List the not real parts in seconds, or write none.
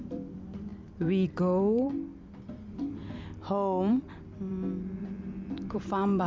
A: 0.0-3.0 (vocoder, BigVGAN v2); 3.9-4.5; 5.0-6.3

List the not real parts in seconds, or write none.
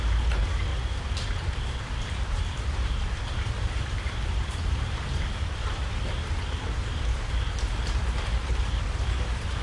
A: 0.0-0.7 (vocoder, BigVGAN v2); 1.8-9.6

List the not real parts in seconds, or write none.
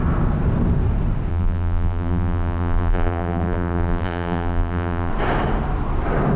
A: 1.3-5.1 (vocoder, BigVGAN v2)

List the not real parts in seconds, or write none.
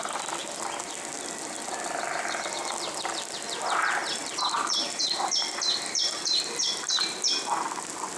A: 4.0-6.7 (vocoder, BigVGAN v2)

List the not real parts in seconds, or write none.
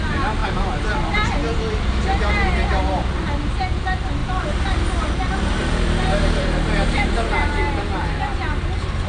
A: 4.2-5.1 (vocoder, BigVGAN v2); 5.6-7.5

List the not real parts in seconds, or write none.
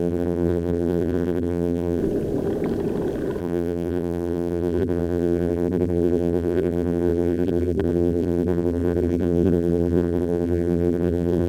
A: 0.0-2.0 (vocoder, BigVGAN v2); 3.4-11.5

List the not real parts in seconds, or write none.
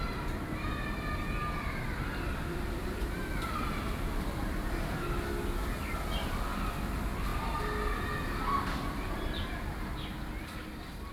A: 1.4-4.8 (vocoder, BigVGAN v2)